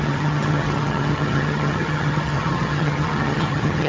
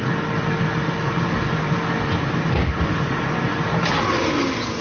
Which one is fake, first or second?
first